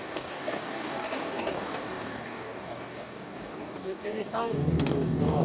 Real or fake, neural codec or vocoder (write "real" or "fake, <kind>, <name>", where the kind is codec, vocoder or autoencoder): fake, codec, DAC